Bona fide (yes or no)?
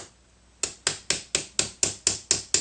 yes